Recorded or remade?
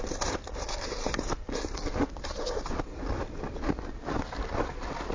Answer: recorded